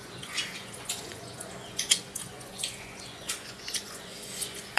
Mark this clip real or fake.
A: fake